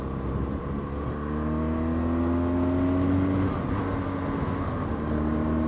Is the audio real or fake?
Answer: real